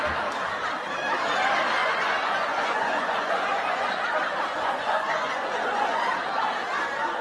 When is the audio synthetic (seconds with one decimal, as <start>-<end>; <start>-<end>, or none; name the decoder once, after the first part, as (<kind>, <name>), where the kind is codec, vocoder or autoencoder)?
1.8-3.9 (vocoder, Vocos); 4.5-6.0